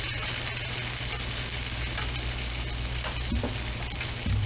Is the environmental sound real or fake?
real